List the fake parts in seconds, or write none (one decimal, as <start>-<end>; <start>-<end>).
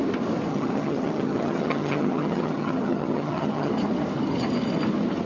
0.5-3.7